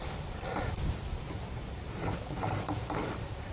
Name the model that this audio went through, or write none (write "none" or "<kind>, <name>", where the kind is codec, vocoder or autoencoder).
vocoder, BigVGAN v2